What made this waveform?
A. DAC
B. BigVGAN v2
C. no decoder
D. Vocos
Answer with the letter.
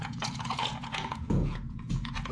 D